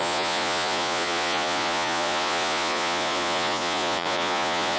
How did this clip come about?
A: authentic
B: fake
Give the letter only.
B